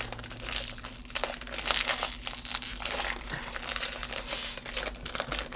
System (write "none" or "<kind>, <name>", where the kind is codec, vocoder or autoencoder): none